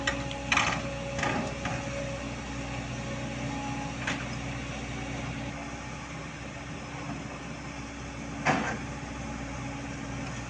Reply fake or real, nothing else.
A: real